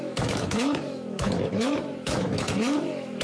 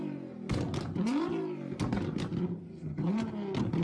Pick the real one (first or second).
second